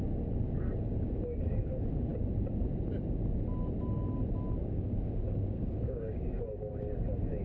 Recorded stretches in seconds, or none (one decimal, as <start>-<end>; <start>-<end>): 0.0-4.6; 6.7-7.4